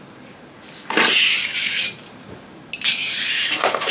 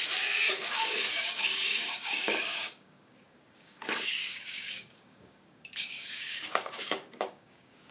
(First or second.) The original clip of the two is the first